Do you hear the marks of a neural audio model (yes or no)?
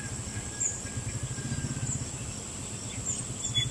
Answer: no